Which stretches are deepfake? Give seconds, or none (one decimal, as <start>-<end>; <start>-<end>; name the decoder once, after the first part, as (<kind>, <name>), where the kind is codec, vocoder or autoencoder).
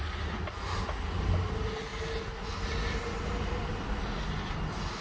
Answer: none